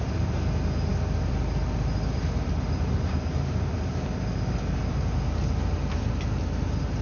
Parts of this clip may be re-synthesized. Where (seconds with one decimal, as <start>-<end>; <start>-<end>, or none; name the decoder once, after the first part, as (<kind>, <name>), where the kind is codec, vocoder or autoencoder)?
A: none